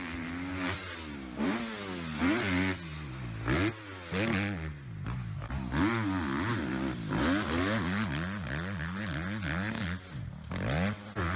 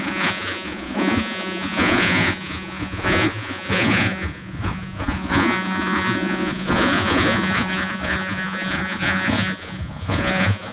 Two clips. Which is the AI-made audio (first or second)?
second